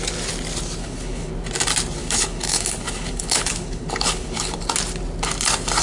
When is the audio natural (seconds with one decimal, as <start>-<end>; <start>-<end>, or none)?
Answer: 0.0-0.8; 1.3-2.0; 4.6-5.8